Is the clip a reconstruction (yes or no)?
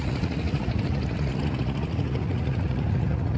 yes